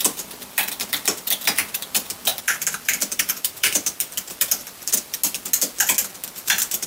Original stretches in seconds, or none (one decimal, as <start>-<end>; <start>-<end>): 5.2-6.3